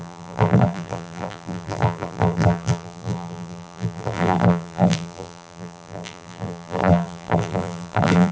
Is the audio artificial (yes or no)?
yes